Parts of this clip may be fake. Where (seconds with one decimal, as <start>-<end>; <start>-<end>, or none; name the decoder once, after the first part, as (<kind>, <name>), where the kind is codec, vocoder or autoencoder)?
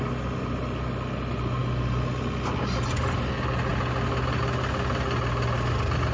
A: none